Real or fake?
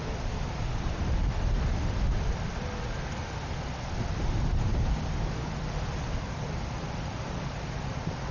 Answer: real